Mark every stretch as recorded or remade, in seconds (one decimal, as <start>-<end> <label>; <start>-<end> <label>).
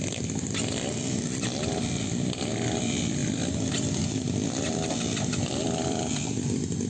0.0-3.2 recorded; 3.2-6.3 remade; 6.3-6.9 recorded